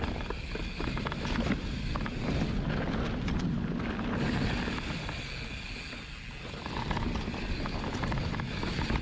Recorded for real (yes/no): yes